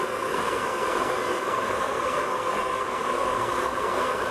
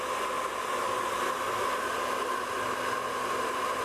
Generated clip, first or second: first